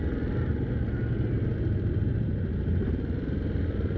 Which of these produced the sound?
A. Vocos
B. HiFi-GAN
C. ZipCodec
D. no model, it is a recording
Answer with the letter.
D